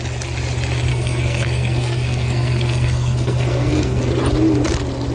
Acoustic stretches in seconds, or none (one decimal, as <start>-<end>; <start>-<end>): 0.0-0.9; 4.0-5.1